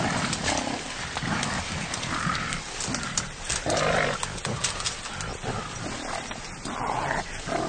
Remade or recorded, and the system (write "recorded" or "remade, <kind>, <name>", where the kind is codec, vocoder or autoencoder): recorded